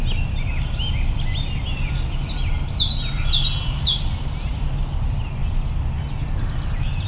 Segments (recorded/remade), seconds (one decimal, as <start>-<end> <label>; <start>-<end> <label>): 0.0-7.1 recorded